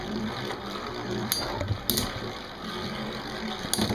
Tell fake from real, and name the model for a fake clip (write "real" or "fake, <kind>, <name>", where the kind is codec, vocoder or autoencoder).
real